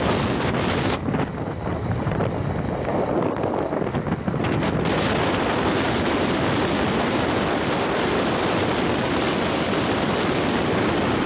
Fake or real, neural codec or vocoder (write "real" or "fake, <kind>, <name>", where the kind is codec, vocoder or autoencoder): real